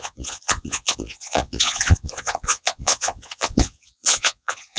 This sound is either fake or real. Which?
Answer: fake